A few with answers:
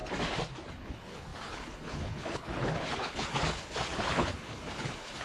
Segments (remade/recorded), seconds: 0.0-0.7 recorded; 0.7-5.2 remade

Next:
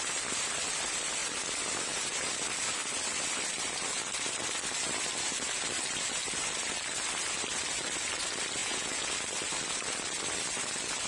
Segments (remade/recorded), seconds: 0.0-8.6 recorded; 8.6-9.1 remade; 9.1-11.1 recorded

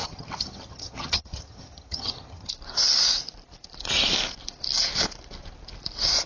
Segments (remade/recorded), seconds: 0.0-2.5 remade; 2.5-6.3 recorded